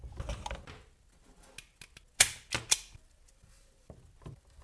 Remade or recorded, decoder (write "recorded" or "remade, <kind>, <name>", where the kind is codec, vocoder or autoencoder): recorded